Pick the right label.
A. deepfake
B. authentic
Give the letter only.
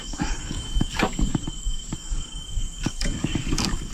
A